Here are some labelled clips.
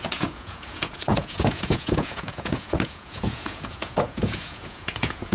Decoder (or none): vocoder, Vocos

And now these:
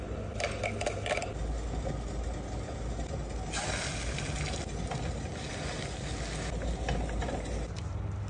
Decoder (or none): none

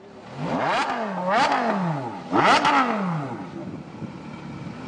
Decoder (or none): none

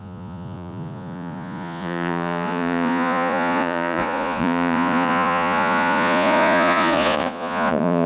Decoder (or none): vocoder, Vocos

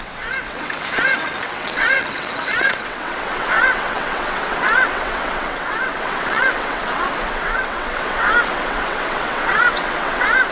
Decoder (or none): vocoder, WaveNeXt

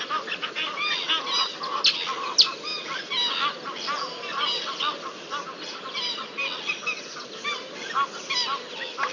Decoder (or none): none